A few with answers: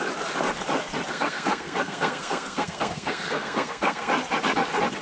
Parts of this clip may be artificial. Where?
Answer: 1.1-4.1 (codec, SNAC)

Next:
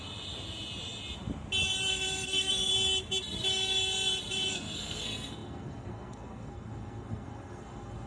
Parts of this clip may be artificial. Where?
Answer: 1.9-2.7 (codec, SNAC); 4.5-8.1

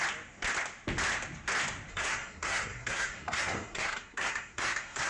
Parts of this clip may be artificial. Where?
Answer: 1.9-5.1 (codec, SNAC)

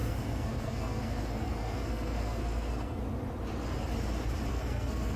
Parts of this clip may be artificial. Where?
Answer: 0.0-3.0 (codec, SNAC); 4.5-5.2

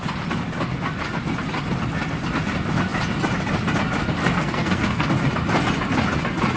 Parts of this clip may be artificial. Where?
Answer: 4.2-5.1 (codec, SNAC)

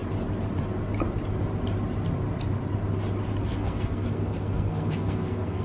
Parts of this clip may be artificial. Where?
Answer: 3.4-5.6 (codec, SNAC)